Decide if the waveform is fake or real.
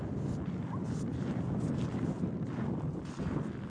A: real